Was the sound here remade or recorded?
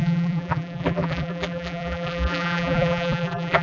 remade